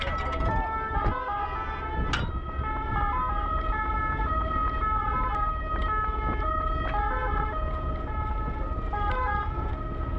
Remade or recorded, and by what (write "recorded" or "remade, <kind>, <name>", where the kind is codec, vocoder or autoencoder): recorded